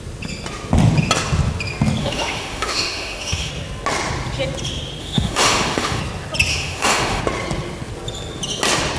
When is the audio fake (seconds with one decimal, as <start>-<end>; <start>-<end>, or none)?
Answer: 2.0-3.5; 5.0-6.0; 6.5-7.2